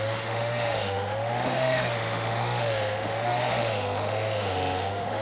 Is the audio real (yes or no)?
no